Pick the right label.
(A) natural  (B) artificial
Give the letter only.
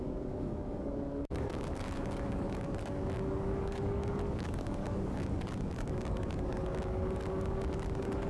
B